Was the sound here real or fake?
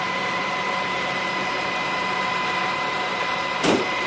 fake